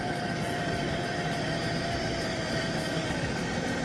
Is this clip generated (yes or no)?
no